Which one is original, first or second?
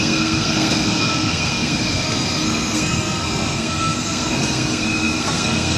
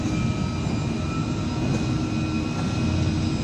second